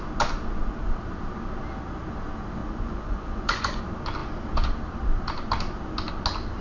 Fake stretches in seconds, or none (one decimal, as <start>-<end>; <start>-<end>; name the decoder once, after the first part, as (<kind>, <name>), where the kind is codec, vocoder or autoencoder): 2.6-3.8 (vocoder, Vocos)